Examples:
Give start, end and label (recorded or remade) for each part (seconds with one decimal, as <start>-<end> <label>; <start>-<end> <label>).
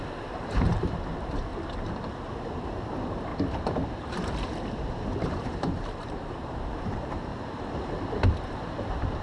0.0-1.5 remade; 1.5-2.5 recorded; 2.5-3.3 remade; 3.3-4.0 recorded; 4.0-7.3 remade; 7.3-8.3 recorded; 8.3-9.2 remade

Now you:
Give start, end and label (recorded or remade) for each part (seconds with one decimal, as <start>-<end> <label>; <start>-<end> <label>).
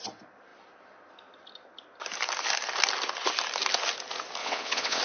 0.0-4.4 recorded; 4.4-5.0 remade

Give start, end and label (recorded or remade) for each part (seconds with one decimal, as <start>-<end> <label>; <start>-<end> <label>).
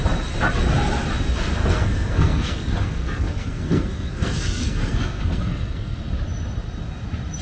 0.0-1.6 recorded; 1.6-6.0 remade; 6.0-7.4 recorded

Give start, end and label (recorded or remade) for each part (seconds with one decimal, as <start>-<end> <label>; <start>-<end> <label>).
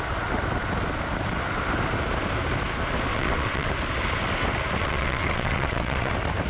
0.0-3.1 recorded; 3.1-3.7 remade; 3.7-4.8 recorded; 4.8-6.1 remade; 6.1-6.5 recorded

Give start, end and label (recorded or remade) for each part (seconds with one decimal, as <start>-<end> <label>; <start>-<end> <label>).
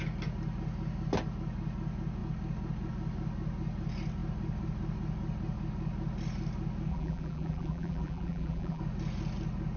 0.0-6.9 recorded; 6.9-8.8 remade; 8.8-9.8 recorded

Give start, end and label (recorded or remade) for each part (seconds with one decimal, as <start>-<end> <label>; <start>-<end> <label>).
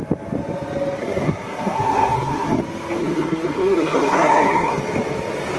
0.0-1.0 recorded; 1.0-2.6 remade; 2.6-3.0 recorded; 3.0-4.8 remade; 4.8-5.6 recorded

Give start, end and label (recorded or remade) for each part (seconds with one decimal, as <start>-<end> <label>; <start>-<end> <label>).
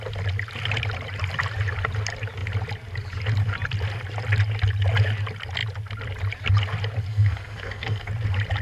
0.0-7.1 recorded; 7.1-8.1 remade; 8.1-8.6 recorded